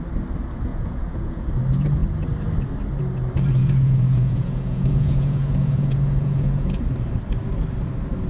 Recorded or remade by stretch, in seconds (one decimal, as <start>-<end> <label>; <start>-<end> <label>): 0.0-0.7 recorded; 0.7-1.5 remade; 1.5-3.6 recorded; 3.6-6.8 remade; 6.8-8.3 recorded